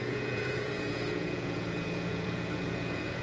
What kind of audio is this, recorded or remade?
remade